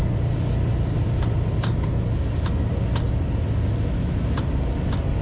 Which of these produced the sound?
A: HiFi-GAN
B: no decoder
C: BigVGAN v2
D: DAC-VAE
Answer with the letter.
B